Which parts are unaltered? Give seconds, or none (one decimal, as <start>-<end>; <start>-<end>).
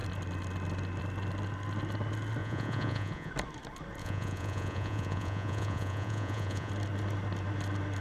0.0-2.4; 3.3-4.0; 6.7-8.0